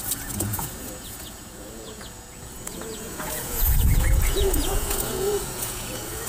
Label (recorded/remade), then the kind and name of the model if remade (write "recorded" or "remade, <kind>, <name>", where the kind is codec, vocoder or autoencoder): remade, vocoder, Vocos